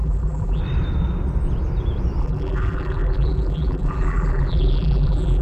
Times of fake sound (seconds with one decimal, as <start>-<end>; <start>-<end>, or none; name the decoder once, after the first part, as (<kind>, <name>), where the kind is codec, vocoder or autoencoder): 0.0-0.6 (vocoder, BigVGAN v2); 2.2-5.4